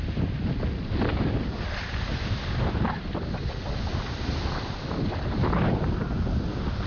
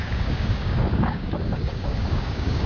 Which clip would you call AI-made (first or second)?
second